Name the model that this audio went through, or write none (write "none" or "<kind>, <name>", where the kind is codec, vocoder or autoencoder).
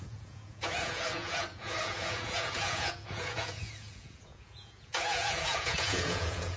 vocoder, Vocos